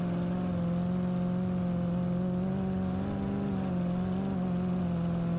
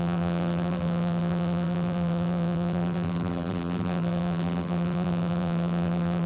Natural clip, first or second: first